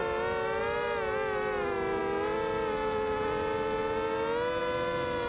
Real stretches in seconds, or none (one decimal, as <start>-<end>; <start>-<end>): 0.0-5.3